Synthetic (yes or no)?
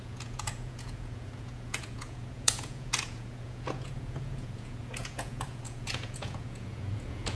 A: yes